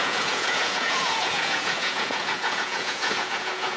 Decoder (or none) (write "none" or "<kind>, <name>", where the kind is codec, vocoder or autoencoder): vocoder, Vocos